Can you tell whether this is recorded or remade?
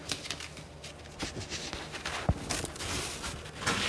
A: recorded